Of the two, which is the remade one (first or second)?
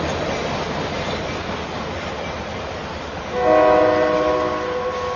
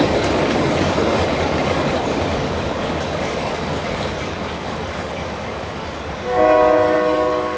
second